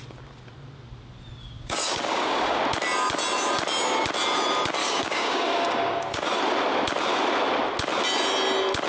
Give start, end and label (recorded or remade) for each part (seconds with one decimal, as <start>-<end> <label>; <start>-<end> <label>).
0.0-1.4 recorded; 1.4-2.6 remade; 2.6-4.8 recorded; 4.8-6.4 remade; 6.4-8.9 recorded